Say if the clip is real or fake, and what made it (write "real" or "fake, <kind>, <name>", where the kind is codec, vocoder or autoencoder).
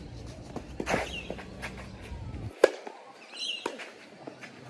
real